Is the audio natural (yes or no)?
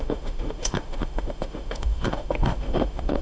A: no